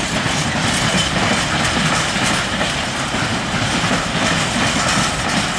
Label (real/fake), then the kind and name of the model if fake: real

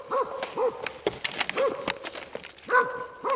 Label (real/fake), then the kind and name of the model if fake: real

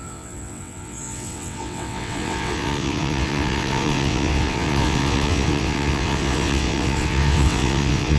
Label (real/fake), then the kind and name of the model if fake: fake, vocoder, WaveNeXt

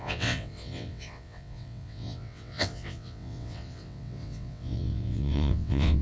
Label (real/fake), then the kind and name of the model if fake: fake, vocoder, WaveNeXt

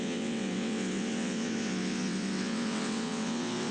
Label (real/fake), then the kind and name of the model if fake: fake, vocoder, WaveNeXt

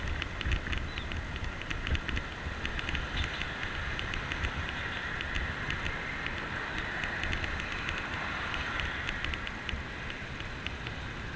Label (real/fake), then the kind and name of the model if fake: real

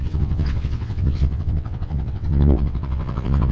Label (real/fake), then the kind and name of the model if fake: fake, vocoder, WaveNeXt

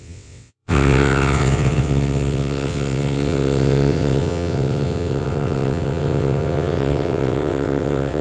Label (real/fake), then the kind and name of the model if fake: fake, vocoder, WaveNeXt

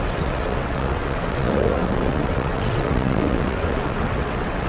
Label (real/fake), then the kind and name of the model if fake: fake, vocoder, WaveNeXt